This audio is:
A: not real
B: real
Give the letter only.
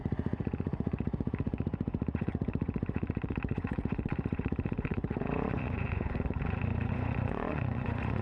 A